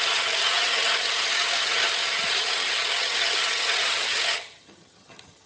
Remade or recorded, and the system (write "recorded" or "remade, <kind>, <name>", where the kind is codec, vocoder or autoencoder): remade, vocoder, HiFi-GAN